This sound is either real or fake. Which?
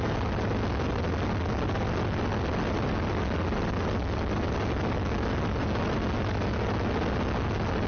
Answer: real